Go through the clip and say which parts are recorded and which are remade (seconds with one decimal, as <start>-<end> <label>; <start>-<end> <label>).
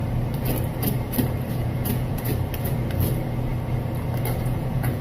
0.0-1.5 recorded; 1.5-2.3 remade; 2.3-4.4 recorded; 4.4-5.0 remade